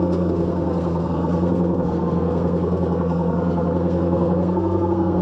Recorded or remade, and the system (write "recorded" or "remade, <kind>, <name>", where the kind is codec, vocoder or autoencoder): remade, codec, SNAC